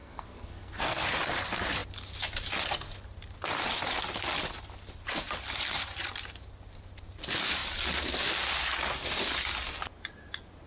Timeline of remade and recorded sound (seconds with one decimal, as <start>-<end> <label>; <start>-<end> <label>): 0.0-1.0 remade; 1.0-10.7 recorded